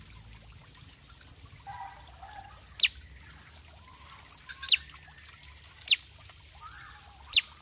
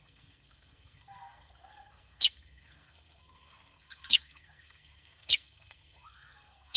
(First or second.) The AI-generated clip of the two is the second